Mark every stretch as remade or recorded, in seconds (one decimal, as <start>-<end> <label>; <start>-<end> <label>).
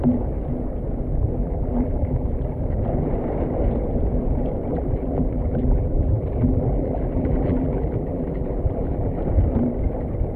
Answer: 0.0-1.4 recorded; 1.4-2.6 remade; 2.6-4.7 recorded; 4.7-9.2 remade; 9.2-10.4 recorded